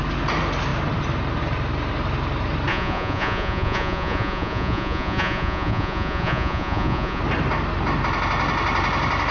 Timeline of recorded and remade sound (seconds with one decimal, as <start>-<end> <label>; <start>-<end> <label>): 0.0-2.7 recorded; 2.7-7.2 remade; 7.2-9.3 recorded